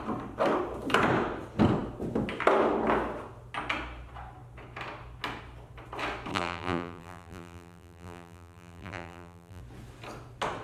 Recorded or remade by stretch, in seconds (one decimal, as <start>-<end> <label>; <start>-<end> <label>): 0.0-6.3 recorded; 6.3-9.6 remade; 9.6-10.6 recorded